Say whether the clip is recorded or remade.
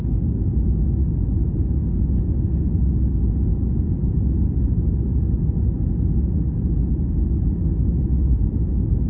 recorded